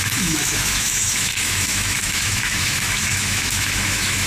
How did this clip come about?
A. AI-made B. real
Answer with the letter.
A